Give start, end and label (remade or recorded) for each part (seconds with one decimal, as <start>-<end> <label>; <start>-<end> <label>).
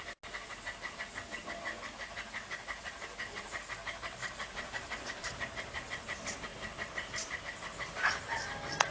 0.0-4.2 recorded; 4.2-5.4 remade; 5.4-8.9 recorded